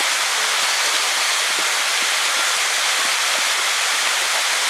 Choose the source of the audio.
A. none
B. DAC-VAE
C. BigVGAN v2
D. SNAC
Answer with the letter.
A